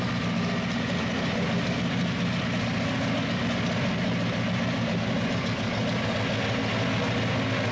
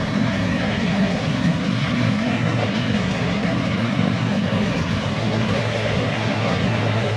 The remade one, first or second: second